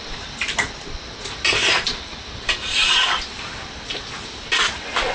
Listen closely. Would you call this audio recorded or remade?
remade